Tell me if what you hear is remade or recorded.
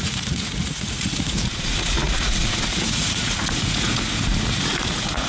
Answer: remade